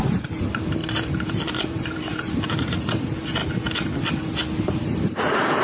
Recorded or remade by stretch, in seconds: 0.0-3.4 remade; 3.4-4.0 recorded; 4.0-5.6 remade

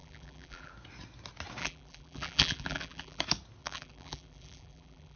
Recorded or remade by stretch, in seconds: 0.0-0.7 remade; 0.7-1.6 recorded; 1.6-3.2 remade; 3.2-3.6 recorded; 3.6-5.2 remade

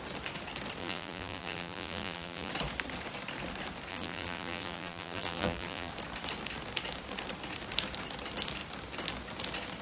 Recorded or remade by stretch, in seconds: 0.0-0.8 recorded; 0.8-2.5 remade; 2.5-3.9 recorded; 3.9-5.9 remade; 5.9-9.8 recorded